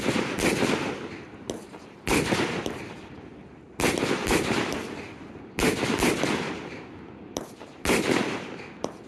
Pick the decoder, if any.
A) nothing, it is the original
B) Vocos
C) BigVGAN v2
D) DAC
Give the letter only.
A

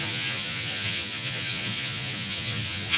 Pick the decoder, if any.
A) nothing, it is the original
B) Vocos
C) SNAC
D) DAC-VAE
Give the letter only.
B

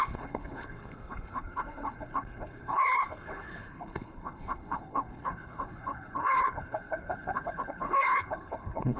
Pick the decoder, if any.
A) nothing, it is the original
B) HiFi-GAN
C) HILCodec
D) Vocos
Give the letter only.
C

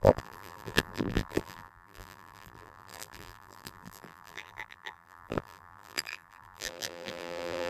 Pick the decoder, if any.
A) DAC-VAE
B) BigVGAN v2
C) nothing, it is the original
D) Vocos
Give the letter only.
B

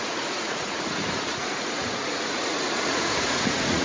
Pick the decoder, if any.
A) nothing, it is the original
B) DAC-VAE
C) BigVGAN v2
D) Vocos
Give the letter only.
D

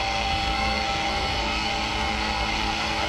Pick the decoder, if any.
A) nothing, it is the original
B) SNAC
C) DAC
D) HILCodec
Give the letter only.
B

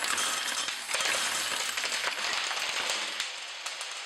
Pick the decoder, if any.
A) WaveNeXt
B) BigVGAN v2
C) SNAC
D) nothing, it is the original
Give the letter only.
D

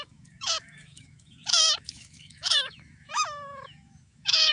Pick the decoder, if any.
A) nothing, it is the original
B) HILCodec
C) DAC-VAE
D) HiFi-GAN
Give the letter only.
C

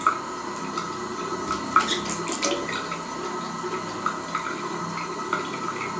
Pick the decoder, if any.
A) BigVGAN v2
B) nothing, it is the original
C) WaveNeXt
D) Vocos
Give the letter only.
B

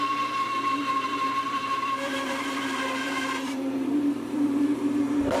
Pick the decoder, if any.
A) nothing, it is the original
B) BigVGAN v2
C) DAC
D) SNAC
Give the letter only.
B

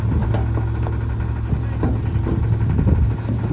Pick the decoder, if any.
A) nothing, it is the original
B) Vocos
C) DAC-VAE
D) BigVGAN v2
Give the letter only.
A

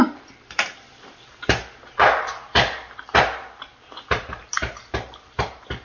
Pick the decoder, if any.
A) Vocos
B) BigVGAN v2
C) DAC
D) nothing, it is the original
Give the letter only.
B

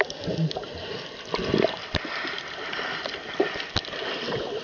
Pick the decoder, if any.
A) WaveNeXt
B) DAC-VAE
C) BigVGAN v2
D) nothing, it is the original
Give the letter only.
D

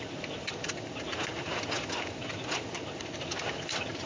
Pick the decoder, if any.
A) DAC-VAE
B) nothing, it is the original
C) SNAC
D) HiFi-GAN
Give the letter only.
B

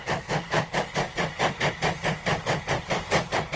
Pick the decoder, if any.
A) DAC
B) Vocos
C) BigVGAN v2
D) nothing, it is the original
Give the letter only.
C